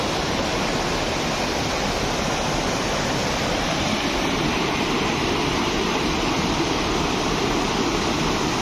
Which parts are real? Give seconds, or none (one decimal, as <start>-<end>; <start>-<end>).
0.0-3.2; 7.7-8.6